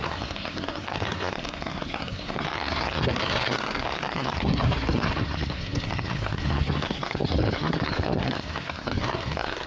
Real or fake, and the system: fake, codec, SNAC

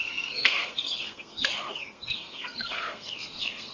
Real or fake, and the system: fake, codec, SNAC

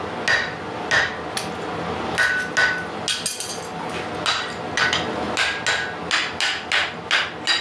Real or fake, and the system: real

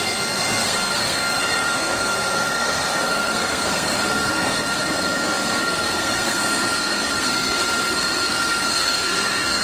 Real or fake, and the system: fake, codec, SNAC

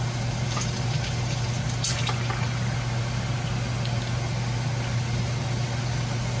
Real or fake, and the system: real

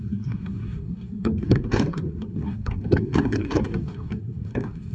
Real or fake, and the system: fake, codec, SNAC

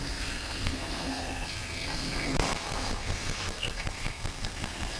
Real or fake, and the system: fake, codec, SNAC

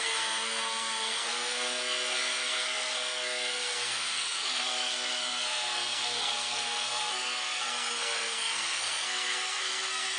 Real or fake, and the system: fake, codec, SNAC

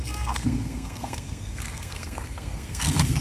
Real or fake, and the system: fake, codec, SNAC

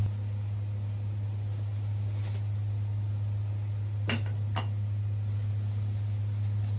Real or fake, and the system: real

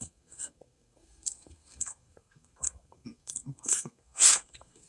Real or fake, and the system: fake, codec, SNAC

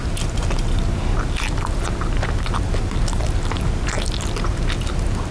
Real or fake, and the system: real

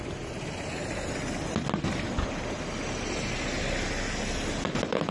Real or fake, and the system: real